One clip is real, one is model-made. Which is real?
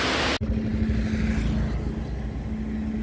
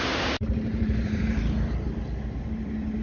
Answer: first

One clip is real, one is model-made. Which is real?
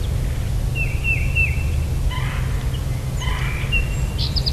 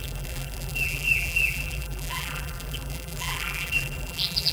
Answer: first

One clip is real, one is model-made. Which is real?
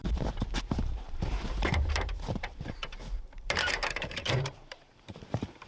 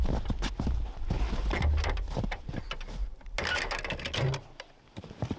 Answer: second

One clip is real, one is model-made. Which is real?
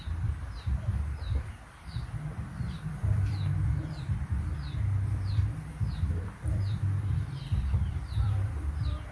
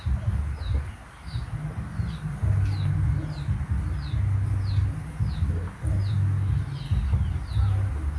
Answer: second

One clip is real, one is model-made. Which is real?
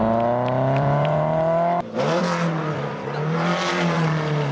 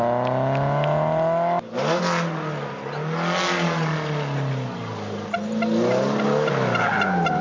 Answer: second